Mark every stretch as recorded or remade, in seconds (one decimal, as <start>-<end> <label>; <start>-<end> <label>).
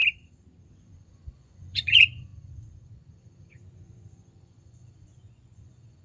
0.0-0.7 recorded; 0.7-6.0 remade